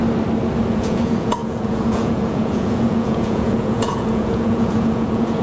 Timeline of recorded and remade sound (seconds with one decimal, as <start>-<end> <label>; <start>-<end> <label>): 0.0-0.7 recorded; 0.7-5.4 remade